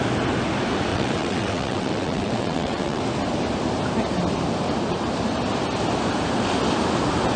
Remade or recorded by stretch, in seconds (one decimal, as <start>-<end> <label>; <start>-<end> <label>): 0.0-0.9 recorded; 0.9-3.0 remade; 3.0-7.4 recorded